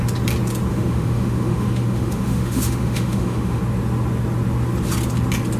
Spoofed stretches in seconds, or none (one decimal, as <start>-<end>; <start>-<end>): 0.7-3.6